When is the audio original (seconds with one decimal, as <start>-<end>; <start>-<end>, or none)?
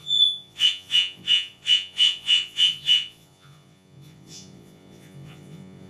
none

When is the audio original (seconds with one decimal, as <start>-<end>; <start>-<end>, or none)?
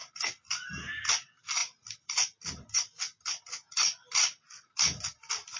0.0-5.6